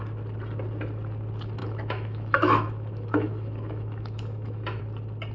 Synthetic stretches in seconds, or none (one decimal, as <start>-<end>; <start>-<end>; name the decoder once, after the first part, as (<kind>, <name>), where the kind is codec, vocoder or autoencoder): 1.6-4.8 (autoencoder, DAC-VAE)